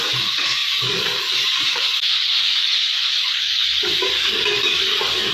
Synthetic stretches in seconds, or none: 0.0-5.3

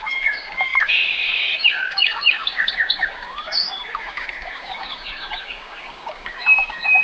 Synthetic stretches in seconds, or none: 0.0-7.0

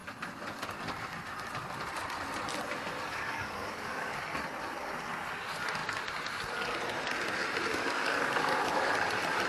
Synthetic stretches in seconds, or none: 3.1-4.2; 7.7-8.8

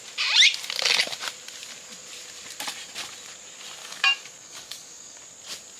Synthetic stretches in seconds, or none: 3.8-5.2

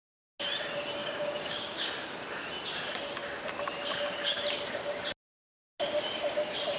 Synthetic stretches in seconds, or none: 1.0-1.9

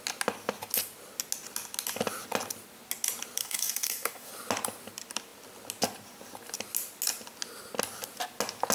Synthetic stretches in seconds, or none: 3.4-4.3

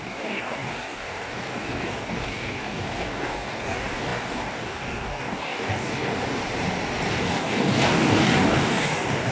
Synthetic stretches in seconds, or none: 0.0-6.4; 7.1-9.3